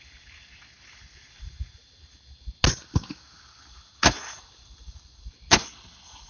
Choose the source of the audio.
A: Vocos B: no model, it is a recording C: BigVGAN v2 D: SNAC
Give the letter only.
B